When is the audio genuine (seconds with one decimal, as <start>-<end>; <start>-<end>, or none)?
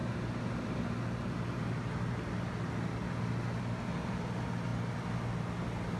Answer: 0.0-6.0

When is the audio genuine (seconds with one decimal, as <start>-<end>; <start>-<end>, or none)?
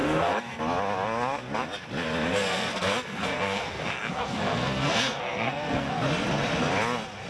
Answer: 0.6-2.3; 5.9-7.3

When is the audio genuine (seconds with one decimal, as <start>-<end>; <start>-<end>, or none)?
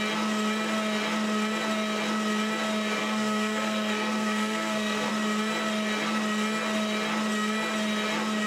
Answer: 0.0-3.0; 5.1-8.5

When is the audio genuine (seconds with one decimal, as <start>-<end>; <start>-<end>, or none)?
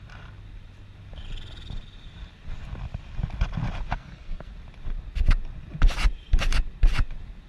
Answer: 0.0-3.9; 4.5-7.5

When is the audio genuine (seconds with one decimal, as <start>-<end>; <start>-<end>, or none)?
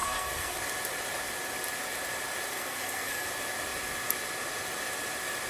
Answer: 0.6-2.5; 3.3-5.5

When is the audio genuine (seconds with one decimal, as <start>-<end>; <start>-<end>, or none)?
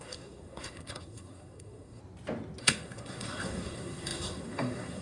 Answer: 2.0-2.6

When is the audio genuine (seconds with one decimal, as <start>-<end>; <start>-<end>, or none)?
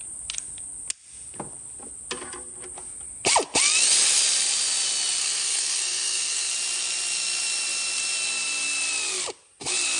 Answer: 0.0-5.2; 6.5-10.0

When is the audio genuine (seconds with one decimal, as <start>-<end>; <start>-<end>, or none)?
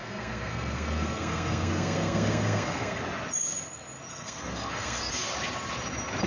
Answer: 3.0-4.1; 5.1-6.3